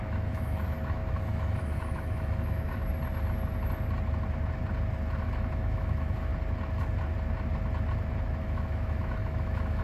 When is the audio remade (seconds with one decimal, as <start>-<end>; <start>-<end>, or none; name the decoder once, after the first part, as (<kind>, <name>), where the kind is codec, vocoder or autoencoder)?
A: 0.0-2.8 (autoencoder, DAC-VAE); 5.2-6.3; 8.4-9.8